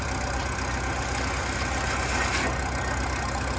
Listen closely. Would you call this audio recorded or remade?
recorded